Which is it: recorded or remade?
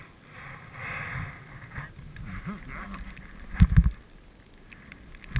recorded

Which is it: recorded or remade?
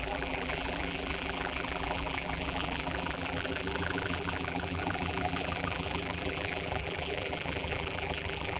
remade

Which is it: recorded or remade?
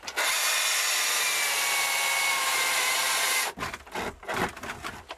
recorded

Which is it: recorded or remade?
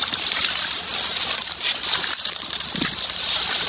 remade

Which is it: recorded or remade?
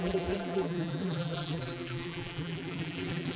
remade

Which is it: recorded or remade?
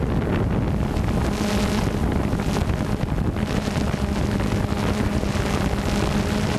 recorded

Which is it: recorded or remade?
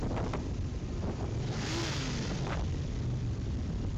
remade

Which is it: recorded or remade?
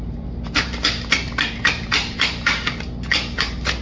remade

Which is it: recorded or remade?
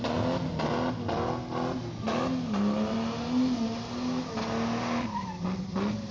recorded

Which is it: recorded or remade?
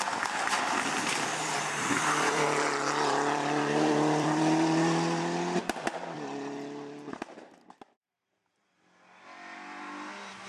remade